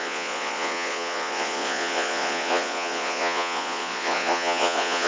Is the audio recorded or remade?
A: remade